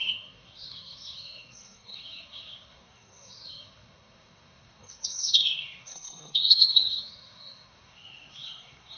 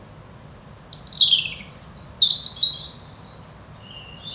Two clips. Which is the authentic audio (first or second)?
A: second